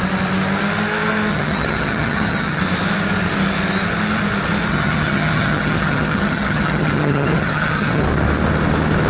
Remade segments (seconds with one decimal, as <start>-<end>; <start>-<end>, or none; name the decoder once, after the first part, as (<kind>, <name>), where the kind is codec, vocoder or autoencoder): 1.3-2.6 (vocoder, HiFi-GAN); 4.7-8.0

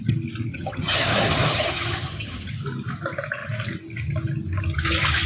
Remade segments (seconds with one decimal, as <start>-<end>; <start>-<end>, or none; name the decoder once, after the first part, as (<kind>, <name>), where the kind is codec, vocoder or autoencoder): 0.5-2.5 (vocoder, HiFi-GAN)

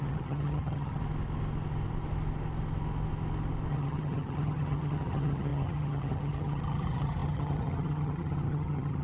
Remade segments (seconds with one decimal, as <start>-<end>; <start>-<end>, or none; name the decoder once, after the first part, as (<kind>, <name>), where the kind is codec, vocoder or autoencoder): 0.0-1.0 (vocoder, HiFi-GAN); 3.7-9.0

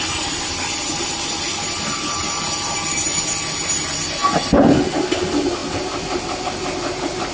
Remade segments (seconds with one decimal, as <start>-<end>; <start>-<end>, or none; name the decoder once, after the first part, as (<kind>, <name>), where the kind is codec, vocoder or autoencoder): none

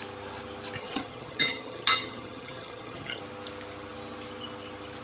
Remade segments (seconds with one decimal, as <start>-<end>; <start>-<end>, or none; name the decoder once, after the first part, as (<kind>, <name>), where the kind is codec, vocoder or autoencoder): 0.8-3.2 (vocoder, HiFi-GAN)

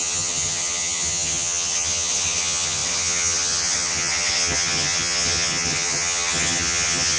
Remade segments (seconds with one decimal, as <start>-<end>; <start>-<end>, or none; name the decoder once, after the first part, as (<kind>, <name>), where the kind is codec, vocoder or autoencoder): 0.0-7.2 (vocoder, HiFi-GAN)

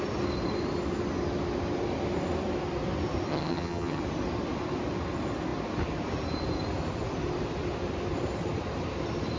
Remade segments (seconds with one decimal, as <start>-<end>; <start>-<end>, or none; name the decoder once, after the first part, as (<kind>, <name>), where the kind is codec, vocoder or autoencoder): 3.3-4.0 (vocoder, HiFi-GAN)

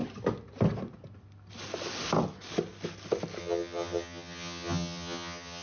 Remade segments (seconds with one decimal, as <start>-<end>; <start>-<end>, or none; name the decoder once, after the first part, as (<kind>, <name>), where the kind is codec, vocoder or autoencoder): 3.4-5.6 (vocoder, HiFi-GAN)